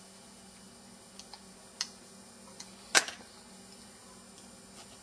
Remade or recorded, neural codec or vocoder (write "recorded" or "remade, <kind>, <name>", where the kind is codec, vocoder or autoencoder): recorded